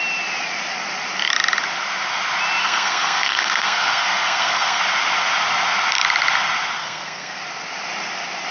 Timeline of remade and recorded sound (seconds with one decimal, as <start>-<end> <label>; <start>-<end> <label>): 0.0-2.6 recorded; 2.6-4.8 remade; 4.8-6.8 recorded; 6.8-7.4 remade; 7.4-8.5 recorded

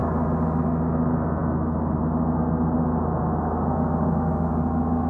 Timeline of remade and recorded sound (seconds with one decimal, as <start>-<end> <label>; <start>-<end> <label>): 0.0-5.1 recorded

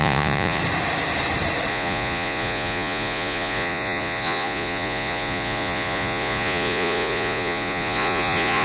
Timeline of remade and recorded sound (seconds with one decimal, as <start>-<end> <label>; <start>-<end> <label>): 0.0-0.6 remade; 0.6-1.7 recorded; 1.7-8.6 remade